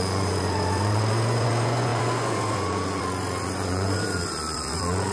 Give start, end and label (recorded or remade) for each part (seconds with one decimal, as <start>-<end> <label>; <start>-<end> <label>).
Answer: 0.0-5.1 remade